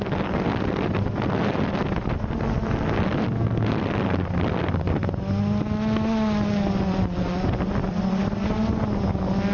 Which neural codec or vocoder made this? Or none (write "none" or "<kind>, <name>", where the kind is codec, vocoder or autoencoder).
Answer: none